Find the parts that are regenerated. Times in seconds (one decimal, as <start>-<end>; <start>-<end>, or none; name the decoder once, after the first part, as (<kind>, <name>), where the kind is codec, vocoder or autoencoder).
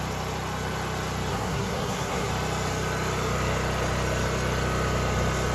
1.3-2.3 (codec, SNAC)